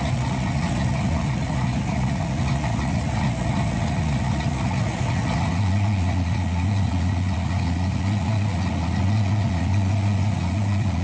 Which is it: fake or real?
fake